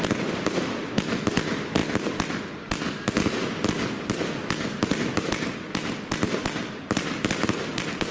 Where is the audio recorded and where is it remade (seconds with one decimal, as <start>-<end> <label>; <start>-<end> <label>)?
0.0-8.1 recorded